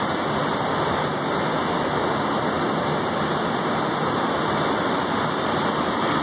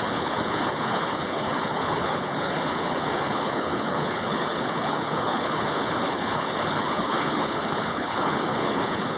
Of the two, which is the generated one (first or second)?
second